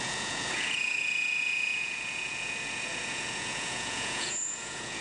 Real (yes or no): no